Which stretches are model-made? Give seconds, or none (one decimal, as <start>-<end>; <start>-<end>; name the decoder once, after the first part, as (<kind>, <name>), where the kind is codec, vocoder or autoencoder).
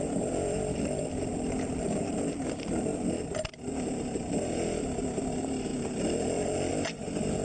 none